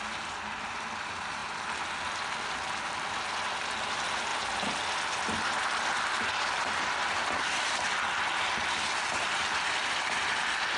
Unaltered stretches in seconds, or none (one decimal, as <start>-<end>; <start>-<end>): 1.4-3.3; 4.3-6.0